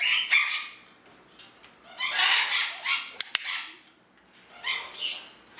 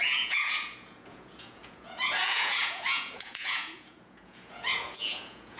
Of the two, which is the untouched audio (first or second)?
first